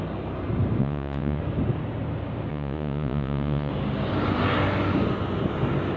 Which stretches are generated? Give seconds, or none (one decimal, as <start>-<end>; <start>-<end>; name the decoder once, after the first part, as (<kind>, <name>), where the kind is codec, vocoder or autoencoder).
0.8-1.4 (vocoder, Vocos); 2.5-3.7